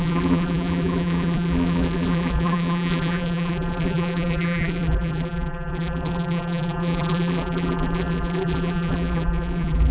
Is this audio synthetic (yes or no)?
yes